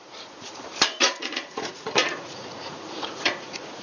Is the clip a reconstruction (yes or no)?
yes